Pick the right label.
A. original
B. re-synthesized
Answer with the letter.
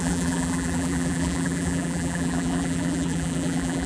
B